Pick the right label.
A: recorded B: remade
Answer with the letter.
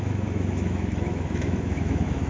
B